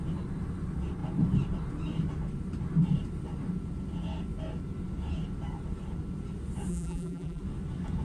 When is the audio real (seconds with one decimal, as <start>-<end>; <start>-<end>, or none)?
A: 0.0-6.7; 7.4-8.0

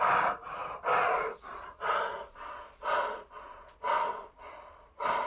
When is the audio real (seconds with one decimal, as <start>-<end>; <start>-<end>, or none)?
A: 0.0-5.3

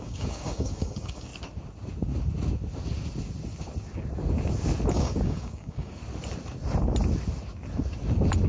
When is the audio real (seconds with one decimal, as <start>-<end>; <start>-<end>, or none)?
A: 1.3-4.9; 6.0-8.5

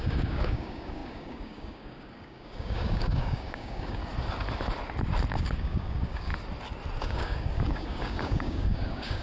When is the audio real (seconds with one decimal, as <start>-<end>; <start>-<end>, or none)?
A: 4.0-5.4; 6.3-7.0

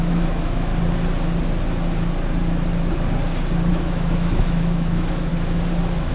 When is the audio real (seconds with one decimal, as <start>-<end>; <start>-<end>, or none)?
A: 0.7-3.7; 5.3-6.1

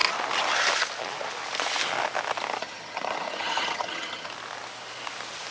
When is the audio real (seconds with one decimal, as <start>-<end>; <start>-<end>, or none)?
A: 0.0-2.6; 4.3-5.5

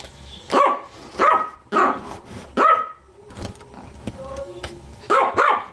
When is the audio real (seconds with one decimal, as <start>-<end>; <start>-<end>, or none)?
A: 1.0-4.4

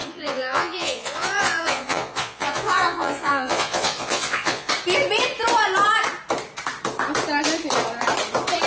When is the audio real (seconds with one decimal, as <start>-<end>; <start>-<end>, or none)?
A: 4.7-8.7